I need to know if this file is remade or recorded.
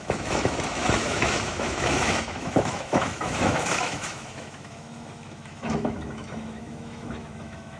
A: remade